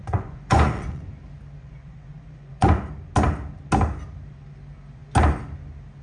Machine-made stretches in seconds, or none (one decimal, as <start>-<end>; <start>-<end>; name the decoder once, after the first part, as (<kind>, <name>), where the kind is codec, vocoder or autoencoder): 0.0-1.1 (vocoder, Vocos); 1.6-2.9